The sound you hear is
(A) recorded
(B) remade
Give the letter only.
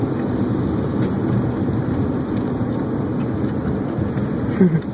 A